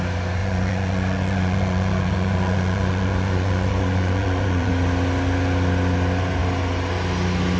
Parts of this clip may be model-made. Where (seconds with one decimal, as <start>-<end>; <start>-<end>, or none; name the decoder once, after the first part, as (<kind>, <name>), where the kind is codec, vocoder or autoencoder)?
0.4-4.7 (vocoder, Vocos)